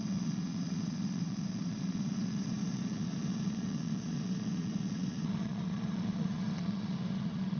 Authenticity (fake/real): fake